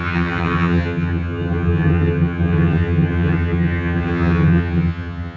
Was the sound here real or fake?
fake